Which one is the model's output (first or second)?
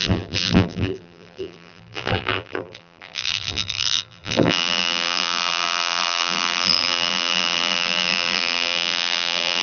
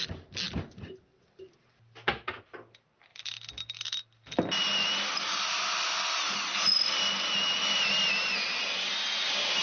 first